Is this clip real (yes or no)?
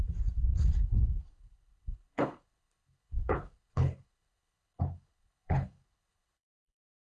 no